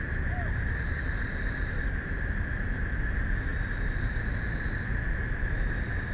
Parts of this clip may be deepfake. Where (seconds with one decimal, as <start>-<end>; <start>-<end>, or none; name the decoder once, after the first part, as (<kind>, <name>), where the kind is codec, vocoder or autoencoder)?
none